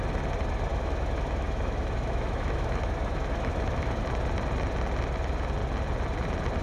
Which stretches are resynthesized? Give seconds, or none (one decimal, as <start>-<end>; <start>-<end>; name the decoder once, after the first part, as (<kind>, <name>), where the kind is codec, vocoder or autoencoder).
0.7-4.0 (autoencoder, DAC-VAE)